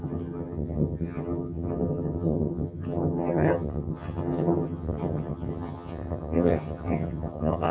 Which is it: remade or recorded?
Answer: remade